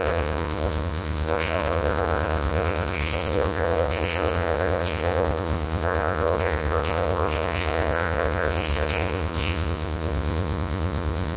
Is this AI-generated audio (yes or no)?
yes